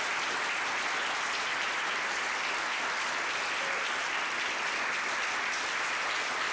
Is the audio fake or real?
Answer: real